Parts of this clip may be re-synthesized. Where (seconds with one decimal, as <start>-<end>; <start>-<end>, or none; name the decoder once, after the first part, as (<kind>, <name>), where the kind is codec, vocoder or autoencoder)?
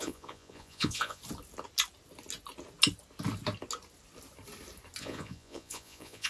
0.0-1.2 (vocoder, Vocos); 5.0-6.3